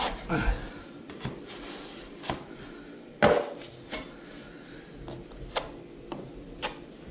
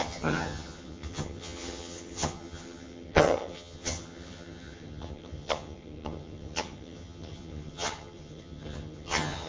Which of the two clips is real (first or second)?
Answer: first